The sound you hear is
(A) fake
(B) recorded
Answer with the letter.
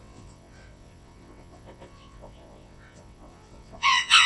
A